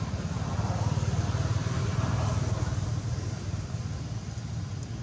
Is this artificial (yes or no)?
no